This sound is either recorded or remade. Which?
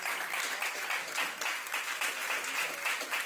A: recorded